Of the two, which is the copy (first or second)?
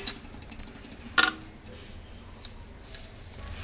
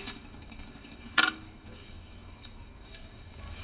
second